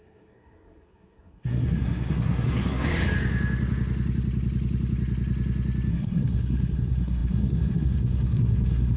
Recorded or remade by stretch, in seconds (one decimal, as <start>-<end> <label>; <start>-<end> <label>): 0.0-3.0 remade; 3.0-5.9 recorded; 5.9-9.0 remade